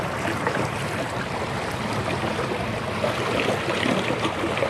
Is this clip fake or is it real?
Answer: real